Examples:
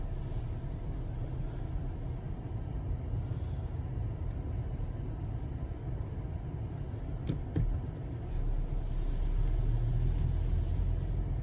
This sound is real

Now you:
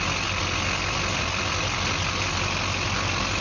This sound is real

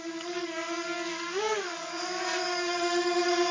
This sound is fake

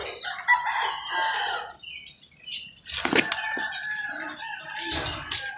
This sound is real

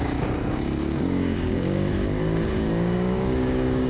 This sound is fake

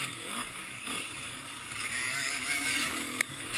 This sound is fake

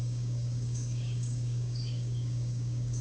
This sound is fake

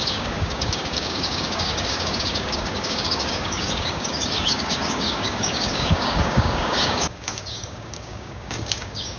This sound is fake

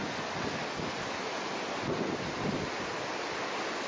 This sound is real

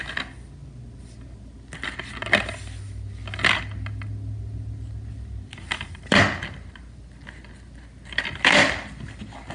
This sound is real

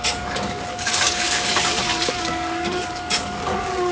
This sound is fake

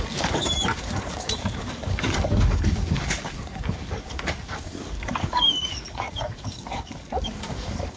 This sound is fake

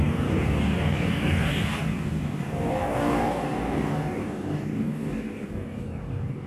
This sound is fake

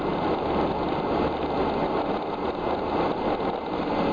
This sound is real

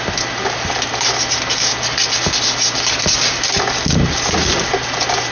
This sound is real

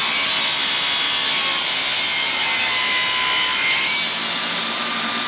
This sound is real